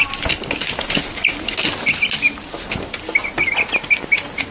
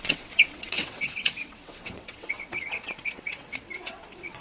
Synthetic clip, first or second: second